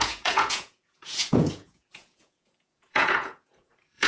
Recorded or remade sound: remade